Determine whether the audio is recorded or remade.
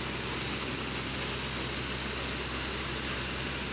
recorded